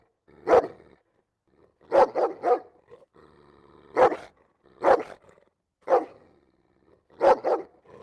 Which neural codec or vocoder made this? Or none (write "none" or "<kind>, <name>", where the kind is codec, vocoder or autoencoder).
none